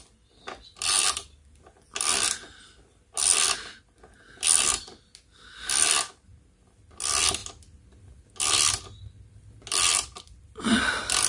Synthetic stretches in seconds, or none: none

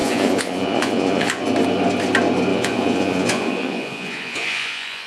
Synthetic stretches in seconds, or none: 0.0-1.4 (vocoder, Vocos); 2.5-5.1